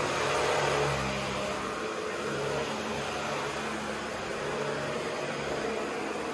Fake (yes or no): no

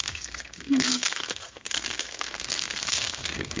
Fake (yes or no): yes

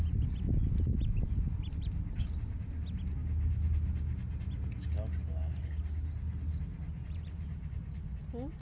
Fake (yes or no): no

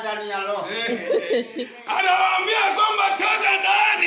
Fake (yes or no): no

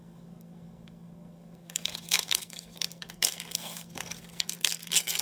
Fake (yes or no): yes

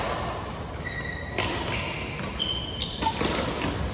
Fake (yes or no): no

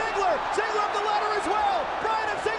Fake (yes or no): no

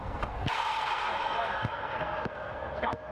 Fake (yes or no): yes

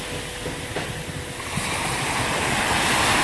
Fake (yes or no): no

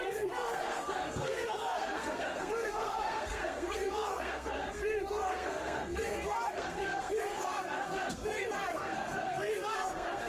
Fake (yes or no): yes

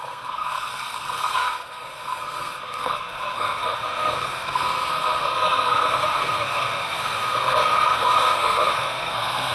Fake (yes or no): yes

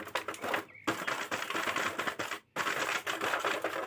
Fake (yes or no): no